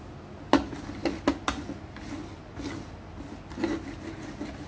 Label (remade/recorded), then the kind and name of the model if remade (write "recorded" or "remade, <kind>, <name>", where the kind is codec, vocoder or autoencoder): recorded